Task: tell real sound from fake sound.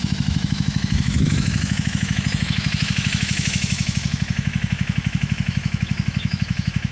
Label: fake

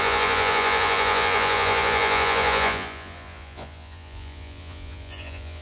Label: fake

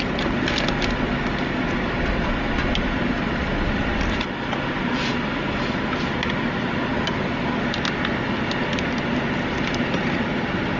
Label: real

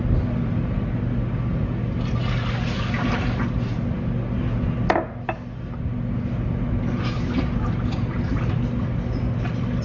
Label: real